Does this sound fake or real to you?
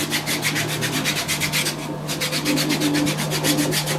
real